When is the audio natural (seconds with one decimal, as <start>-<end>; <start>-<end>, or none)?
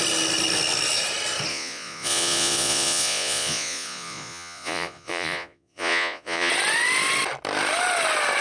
0.0-1.5; 6.5-8.4